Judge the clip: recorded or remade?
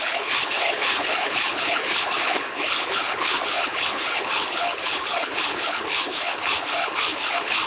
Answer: remade